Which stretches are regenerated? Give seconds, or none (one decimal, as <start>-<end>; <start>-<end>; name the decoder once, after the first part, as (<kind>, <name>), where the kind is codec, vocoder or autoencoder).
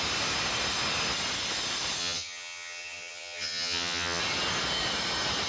2.0-4.2 (vocoder, HiFi-GAN)